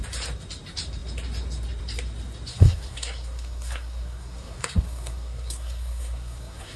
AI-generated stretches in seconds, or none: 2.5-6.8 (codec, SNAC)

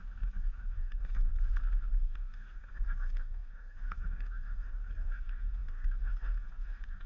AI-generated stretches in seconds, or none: 0.0-1.3 (codec, DAC); 2.0-7.1

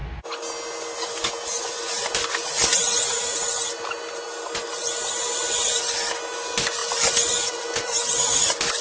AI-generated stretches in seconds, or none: none

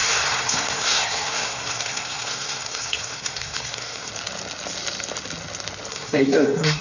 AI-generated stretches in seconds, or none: 0.0-4.1 (codec, SNAC); 5.9-6.8